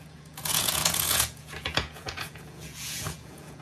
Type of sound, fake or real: fake